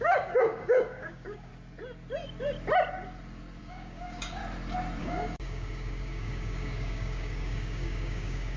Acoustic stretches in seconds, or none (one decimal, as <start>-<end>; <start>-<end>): 1.5-3.6; 4.4-5.0